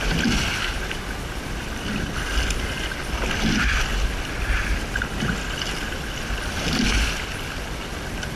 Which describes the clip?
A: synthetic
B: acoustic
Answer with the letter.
B